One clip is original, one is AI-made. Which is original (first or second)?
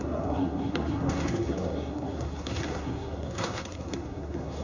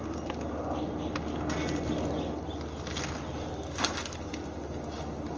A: second